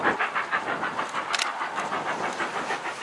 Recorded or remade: recorded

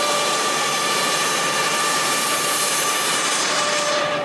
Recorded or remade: remade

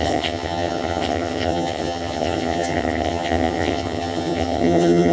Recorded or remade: remade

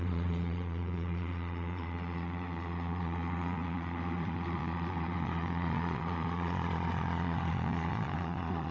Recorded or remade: remade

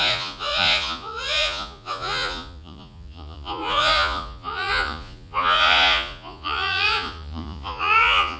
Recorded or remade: remade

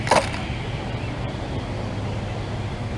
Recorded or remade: recorded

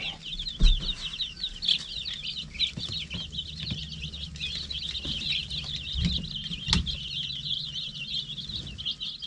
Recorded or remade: recorded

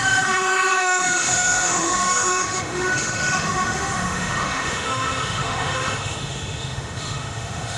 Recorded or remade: remade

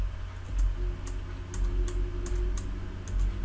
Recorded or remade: recorded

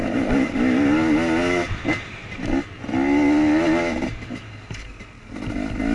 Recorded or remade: recorded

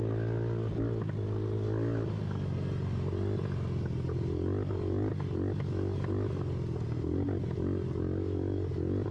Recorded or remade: recorded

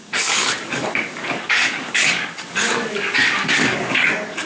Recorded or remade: remade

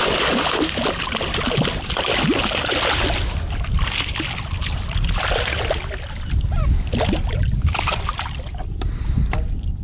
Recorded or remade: recorded